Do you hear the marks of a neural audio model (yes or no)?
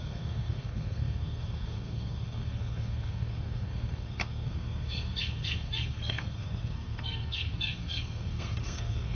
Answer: yes